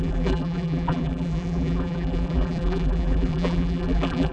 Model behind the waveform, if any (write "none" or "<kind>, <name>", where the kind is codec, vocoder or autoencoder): vocoder, BigVGAN v2